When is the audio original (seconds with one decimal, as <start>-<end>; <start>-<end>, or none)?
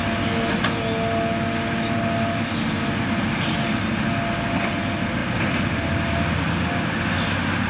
0.0-7.7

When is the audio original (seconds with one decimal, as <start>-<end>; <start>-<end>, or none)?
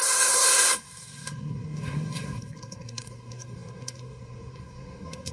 none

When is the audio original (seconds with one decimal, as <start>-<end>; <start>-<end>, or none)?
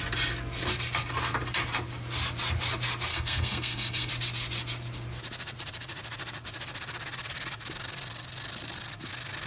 0.0-3.1; 4.1-9.5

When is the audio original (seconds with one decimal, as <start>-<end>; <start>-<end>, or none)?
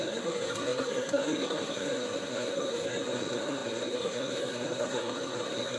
none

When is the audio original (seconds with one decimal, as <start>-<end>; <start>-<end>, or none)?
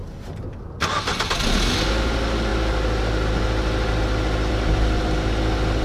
0.0-5.8